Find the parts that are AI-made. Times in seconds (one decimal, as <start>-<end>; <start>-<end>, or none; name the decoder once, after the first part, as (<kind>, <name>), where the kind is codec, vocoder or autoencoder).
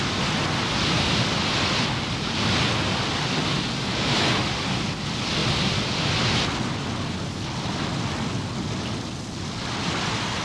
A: 3.9-4.4 (autoencoder, DAC-VAE)